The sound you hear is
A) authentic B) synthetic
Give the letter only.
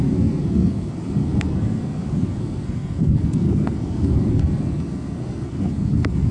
B